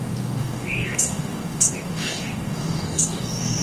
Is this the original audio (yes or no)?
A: no